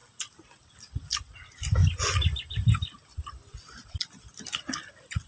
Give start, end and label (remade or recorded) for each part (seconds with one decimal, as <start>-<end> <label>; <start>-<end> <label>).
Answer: 0.0-5.3 recorded